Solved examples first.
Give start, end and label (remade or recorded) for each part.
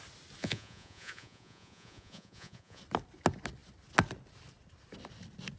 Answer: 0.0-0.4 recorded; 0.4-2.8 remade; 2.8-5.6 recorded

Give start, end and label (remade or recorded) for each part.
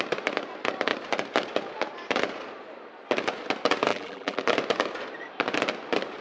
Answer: 0.0-3.9 recorded; 3.9-4.4 remade; 4.4-6.2 recorded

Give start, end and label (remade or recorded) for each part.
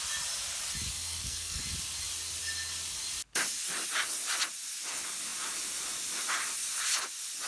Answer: 0.0-0.9 recorded; 0.9-1.6 remade; 1.6-7.5 recorded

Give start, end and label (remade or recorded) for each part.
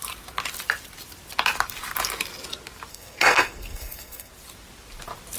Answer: 0.0-2.9 recorded; 2.9-4.3 remade; 4.3-5.4 recorded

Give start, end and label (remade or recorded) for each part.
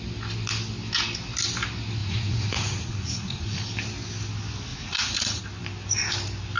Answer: 0.0-2.0 recorded; 2.0-3.7 remade; 3.7-4.7 recorded; 4.7-5.4 remade; 5.4-6.6 recorded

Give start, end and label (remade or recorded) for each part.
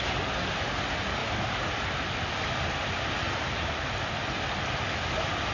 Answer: 0.0-1.2 recorded; 1.2-3.1 remade; 3.1-5.5 recorded